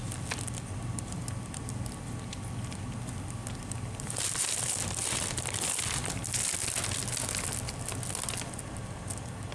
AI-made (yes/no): no